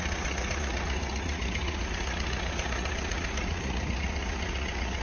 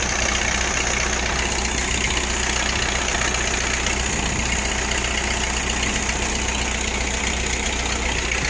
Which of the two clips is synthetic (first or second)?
first